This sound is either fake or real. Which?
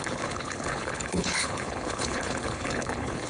fake